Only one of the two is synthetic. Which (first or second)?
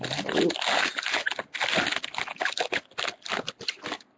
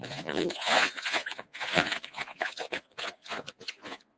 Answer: second